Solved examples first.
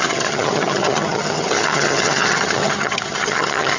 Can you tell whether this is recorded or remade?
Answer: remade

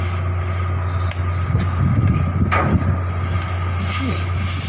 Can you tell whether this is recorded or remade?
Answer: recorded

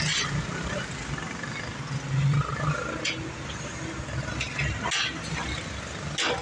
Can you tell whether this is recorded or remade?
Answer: recorded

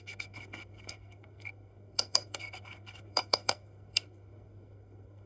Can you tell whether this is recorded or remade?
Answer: remade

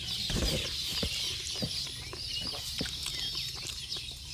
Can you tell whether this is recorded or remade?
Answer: recorded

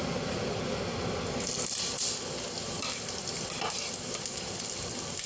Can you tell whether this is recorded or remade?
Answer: recorded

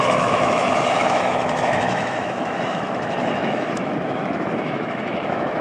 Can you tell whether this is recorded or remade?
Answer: remade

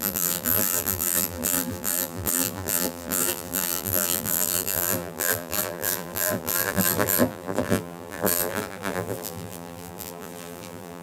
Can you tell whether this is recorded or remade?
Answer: remade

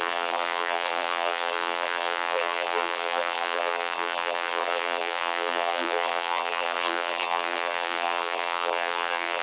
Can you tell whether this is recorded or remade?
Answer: remade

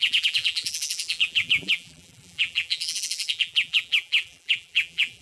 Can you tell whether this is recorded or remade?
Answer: remade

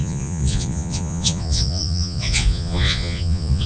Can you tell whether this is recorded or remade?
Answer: remade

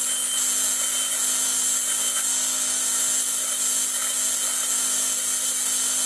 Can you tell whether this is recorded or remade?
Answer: recorded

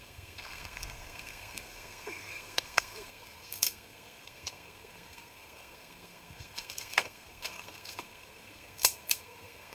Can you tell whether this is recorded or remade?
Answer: remade